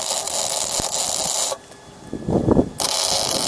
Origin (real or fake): real